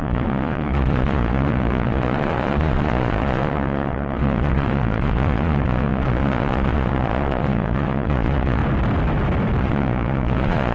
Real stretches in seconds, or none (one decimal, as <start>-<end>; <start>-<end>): 8.6-9.6